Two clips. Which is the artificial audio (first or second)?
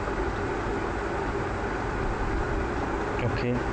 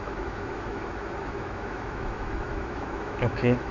second